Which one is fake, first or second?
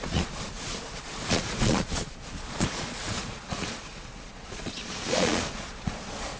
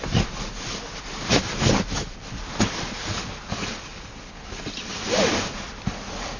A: first